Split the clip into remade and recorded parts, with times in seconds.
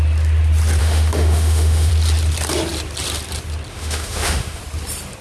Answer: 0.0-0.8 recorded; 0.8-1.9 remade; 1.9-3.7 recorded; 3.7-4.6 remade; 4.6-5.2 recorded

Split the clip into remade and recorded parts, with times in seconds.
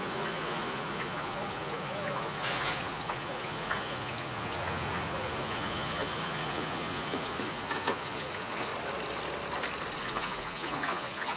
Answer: 0.0-8.7 remade; 8.7-10.0 recorded; 10.0-11.4 remade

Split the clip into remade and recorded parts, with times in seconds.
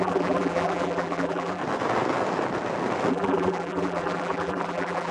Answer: 0.0-1.6 remade; 1.6-3.1 recorded; 3.1-5.1 remade